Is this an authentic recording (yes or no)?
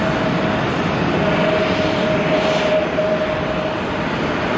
yes